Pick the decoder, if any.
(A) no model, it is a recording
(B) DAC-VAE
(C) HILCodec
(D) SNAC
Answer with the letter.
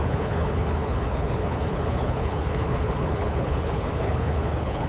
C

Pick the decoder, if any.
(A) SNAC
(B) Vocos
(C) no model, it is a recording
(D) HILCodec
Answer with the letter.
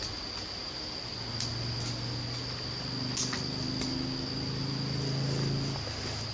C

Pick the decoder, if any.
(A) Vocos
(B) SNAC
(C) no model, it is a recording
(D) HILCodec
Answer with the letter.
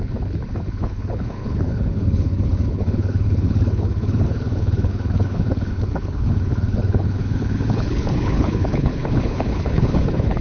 D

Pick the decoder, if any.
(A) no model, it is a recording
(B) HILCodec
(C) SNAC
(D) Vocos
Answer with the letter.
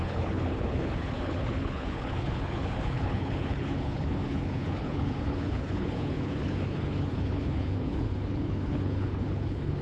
B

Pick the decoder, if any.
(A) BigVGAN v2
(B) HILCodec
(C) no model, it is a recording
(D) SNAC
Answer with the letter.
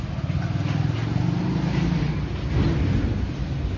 C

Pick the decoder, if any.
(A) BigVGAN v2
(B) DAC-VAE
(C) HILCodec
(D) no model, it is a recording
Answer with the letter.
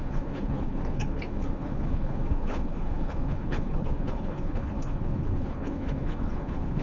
C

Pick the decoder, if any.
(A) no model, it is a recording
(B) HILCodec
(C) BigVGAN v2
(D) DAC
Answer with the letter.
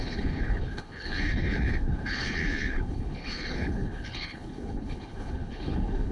B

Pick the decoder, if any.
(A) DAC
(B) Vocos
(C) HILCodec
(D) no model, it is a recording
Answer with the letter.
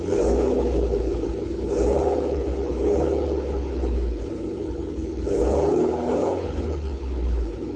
C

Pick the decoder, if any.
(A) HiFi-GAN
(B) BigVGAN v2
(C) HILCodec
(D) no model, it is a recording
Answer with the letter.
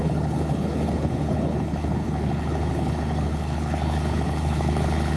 C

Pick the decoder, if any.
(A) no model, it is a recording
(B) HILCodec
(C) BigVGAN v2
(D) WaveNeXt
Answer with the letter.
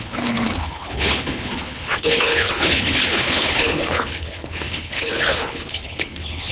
B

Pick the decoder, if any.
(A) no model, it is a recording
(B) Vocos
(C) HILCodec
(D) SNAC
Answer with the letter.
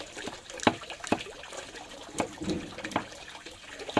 A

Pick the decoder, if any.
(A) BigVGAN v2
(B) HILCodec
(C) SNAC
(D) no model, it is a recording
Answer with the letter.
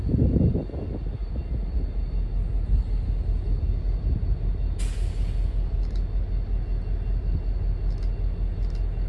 D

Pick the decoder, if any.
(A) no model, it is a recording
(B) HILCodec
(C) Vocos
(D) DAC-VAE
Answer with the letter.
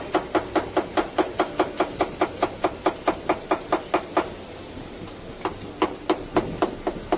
A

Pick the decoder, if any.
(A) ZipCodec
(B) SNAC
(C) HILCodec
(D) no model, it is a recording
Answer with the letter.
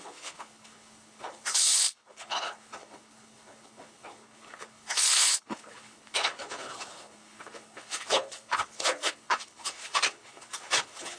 C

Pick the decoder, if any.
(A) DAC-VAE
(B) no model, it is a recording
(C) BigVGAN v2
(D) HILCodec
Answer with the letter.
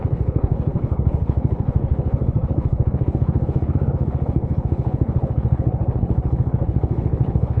D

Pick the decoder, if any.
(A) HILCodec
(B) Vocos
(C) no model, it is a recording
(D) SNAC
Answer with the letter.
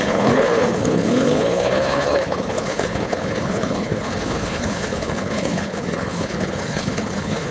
A